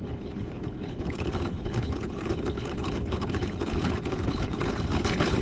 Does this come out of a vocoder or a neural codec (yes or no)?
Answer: yes